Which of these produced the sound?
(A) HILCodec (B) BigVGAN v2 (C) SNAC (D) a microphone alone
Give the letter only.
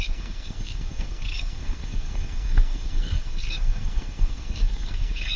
C